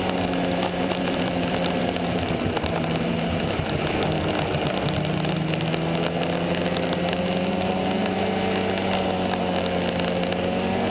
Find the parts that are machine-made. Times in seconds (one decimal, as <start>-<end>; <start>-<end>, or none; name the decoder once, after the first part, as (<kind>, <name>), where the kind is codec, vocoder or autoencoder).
0.4-3.8 (vocoder, BigVGAN v2)